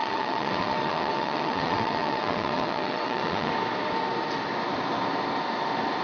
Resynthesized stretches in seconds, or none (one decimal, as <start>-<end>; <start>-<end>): 0.0-3.5